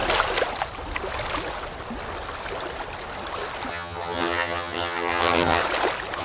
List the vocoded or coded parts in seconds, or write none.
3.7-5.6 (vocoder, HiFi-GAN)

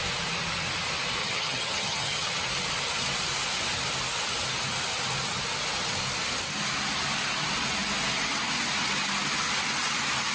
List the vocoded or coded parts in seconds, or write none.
1.2-2.3 (vocoder, HiFi-GAN)

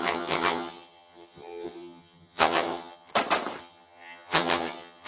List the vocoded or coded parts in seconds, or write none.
0.0-3.1 (vocoder, HiFi-GAN); 3.6-5.1

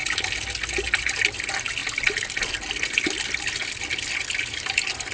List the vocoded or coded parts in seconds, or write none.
none

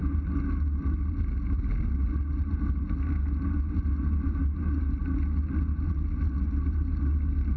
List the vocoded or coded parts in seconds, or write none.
none

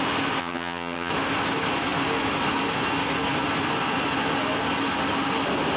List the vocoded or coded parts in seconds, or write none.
0.4-1.1 (vocoder, HiFi-GAN)

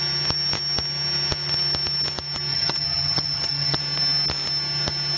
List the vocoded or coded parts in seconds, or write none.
2.5-3.8 (vocoder, HiFi-GAN)